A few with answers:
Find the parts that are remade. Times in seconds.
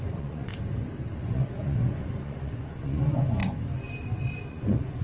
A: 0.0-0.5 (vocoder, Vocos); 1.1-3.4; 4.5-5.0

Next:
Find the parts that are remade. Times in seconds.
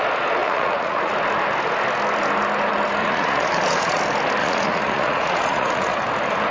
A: 0.4-1.1 (vocoder, Vocos); 3.0-4.0; 4.4-6.0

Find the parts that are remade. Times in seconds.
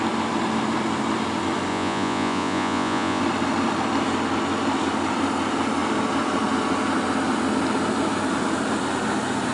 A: 1.7-3.2 (vocoder, Vocos)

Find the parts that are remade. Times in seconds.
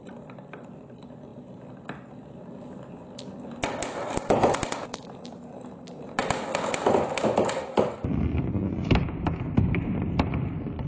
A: none